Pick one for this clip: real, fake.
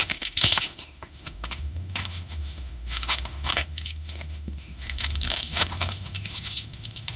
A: fake